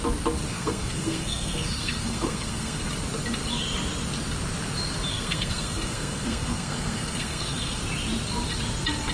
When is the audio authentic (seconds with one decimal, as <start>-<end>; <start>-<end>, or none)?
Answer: 0.0-0.5; 2.8-5.1; 7.8-9.1